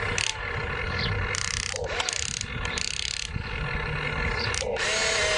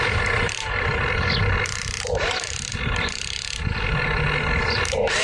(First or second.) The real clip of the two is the first